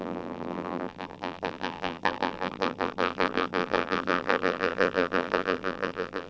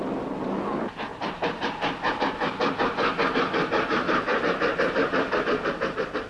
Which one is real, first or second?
second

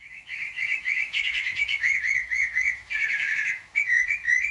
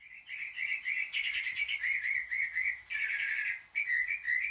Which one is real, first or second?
second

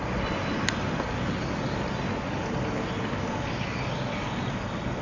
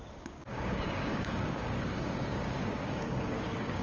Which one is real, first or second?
first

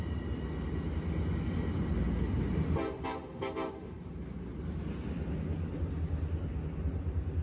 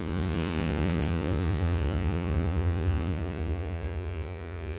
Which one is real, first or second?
first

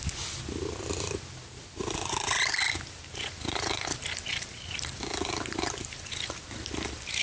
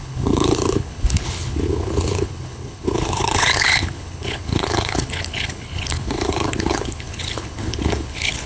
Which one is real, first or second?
first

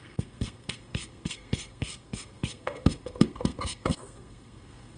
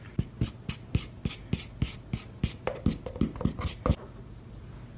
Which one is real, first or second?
second